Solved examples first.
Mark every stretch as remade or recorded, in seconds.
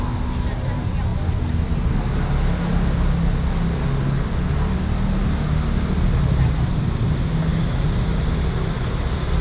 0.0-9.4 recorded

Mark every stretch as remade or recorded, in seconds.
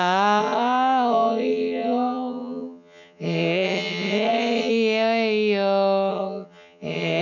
0.0-0.4 recorded; 0.4-4.7 remade; 4.7-6.1 recorded; 6.1-7.2 remade